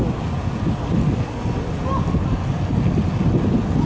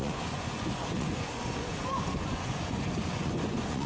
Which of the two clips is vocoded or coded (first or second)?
second